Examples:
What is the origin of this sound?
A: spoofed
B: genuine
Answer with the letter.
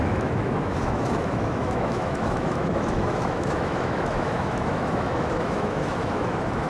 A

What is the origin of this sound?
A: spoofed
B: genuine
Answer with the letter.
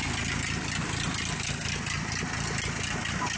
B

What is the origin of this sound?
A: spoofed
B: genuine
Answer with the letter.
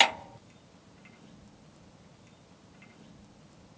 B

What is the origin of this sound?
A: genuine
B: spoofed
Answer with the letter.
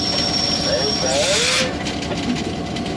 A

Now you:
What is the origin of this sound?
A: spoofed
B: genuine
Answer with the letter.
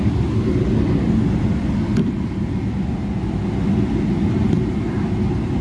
B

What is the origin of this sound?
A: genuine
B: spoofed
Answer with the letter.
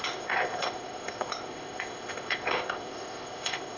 B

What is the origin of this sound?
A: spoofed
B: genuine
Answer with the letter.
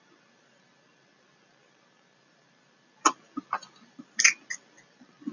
B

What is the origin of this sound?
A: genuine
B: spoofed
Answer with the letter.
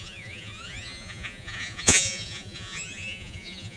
B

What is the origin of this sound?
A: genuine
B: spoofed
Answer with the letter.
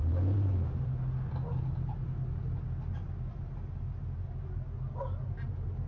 A